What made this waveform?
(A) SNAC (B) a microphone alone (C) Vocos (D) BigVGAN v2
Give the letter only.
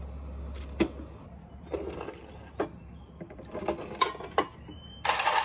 B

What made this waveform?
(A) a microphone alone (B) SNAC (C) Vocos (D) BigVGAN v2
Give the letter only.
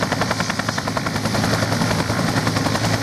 D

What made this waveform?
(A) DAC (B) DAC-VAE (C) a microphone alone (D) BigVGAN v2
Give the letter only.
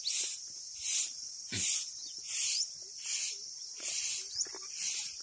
C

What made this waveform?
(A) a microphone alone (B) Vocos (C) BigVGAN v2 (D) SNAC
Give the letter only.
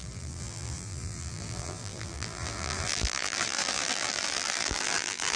C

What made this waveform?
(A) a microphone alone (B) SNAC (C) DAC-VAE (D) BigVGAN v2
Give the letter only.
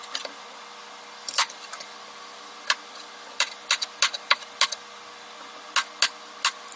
A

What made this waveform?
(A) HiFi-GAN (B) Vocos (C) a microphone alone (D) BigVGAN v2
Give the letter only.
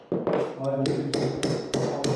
C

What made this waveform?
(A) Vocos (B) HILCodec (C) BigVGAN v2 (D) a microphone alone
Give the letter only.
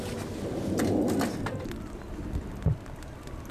D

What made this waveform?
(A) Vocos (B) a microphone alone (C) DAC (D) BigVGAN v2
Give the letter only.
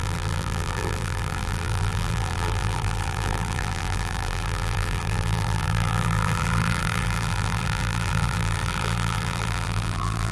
D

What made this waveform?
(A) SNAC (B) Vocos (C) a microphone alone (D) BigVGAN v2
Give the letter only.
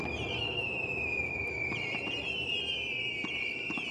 D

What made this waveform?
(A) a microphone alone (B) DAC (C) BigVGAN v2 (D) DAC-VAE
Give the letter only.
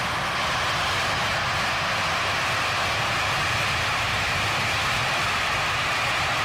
A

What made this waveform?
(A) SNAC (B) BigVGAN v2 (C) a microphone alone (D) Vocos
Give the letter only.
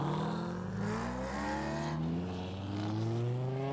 C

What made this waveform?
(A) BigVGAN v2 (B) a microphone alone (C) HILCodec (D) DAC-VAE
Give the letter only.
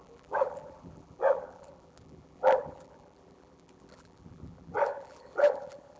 A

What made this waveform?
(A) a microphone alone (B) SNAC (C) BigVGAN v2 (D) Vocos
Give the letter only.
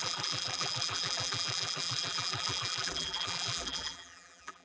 C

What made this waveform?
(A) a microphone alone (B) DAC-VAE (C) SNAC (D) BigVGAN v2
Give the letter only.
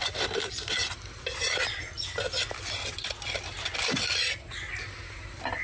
A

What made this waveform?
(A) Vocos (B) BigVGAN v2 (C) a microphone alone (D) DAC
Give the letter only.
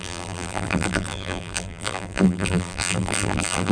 B